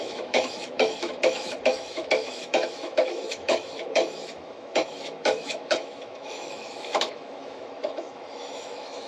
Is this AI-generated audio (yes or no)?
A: yes